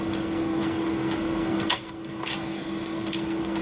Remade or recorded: remade